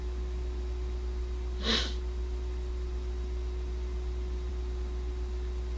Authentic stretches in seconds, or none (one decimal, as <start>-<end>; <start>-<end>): 0.0-5.8